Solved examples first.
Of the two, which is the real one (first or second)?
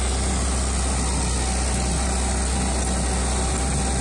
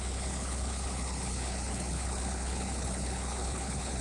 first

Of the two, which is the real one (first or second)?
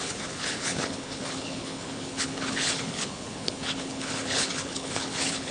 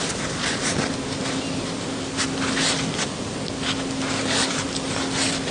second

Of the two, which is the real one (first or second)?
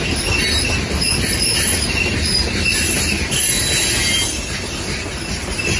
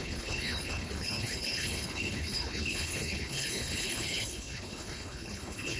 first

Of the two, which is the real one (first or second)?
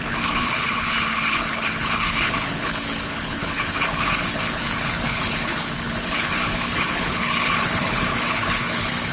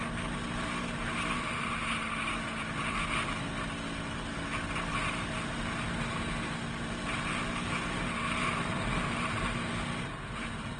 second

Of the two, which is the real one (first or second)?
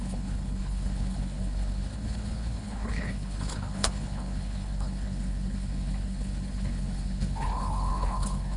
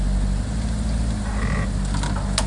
second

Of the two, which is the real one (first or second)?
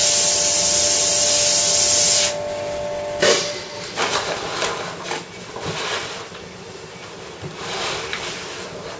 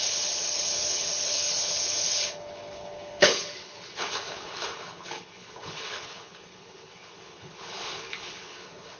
first